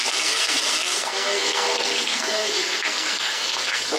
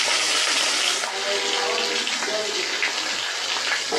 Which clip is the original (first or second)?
second